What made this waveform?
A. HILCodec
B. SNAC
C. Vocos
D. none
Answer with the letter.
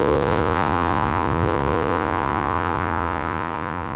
C